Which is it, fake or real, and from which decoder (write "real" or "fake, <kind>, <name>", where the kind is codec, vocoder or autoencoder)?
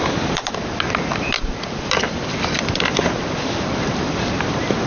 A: fake, vocoder, BigVGAN v2